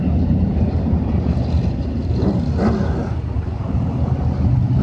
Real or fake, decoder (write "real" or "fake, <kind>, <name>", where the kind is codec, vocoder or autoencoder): real